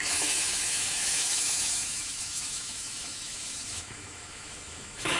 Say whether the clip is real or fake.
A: fake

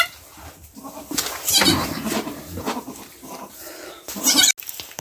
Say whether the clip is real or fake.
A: real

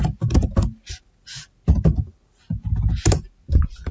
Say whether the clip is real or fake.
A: real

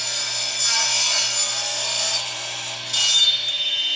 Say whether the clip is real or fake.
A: real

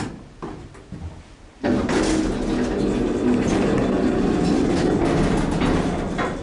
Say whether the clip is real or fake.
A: real